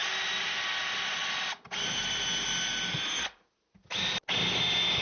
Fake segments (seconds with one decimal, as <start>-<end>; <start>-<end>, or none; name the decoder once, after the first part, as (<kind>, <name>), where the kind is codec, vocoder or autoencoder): none